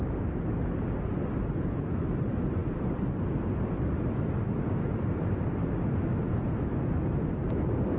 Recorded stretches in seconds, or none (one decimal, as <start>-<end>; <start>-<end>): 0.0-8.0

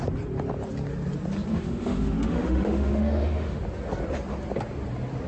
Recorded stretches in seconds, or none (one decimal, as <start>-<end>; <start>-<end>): 0.0-1.5; 3.6-5.3

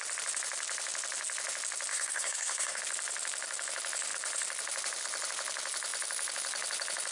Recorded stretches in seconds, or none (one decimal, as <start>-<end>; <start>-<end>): 0.0-1.9; 2.8-7.1

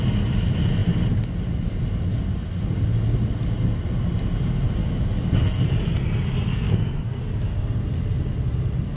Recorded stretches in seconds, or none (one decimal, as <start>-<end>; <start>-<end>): 0.0-6.5; 7.2-9.0

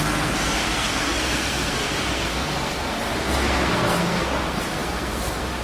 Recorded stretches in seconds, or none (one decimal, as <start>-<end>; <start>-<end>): none

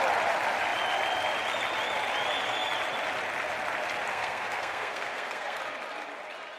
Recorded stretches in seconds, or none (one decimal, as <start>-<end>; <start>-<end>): 0.0-4.1; 5.6-6.6

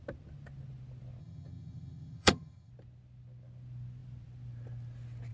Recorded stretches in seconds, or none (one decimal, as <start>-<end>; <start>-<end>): 0.0-1.2; 2.7-5.3

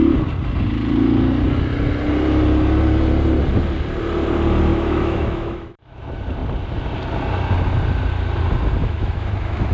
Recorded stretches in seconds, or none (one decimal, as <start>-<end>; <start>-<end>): 0.0-4.7; 6.0-8.8